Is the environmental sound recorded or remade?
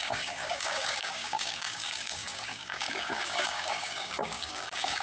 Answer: remade